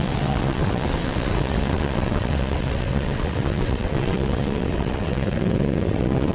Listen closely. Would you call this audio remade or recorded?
remade